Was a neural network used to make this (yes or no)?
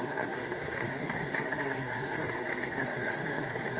yes